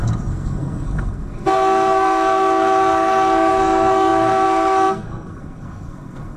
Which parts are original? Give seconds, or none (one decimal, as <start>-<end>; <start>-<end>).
none